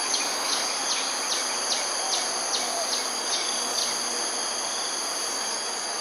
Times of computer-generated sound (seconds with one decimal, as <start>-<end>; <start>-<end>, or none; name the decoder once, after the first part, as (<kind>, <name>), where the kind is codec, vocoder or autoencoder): 0.0-0.8 (codec, DAC); 3.1-3.8; 5.3-6.0